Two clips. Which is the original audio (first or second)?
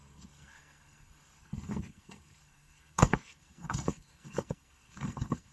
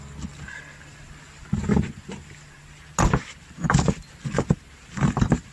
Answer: second